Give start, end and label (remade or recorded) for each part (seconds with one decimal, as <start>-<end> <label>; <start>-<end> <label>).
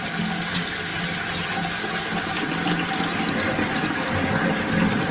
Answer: 0.0-5.1 recorded